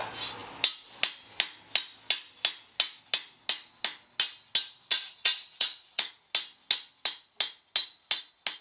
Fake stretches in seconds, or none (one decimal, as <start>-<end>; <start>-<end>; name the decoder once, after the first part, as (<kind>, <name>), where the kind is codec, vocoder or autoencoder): 4.9-6.2 (vocoder, Vocos)